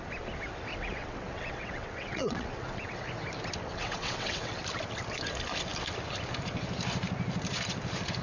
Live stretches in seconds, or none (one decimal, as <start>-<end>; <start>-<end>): 0.0-0.7; 3.1-3.7; 4.6-8.2